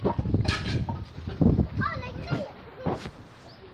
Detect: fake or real real